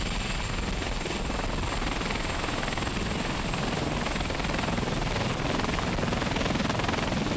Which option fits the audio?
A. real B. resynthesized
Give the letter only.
A